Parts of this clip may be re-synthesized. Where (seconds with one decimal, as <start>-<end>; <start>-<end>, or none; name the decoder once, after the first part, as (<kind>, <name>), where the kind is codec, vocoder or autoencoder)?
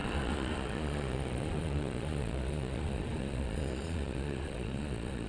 0.0-5.3 (vocoder, Vocos)